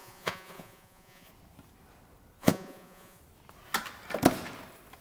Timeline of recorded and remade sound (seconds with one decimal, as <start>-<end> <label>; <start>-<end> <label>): 0.0-1.3 remade; 1.3-2.4 recorded; 2.4-3.2 remade; 3.2-5.0 recorded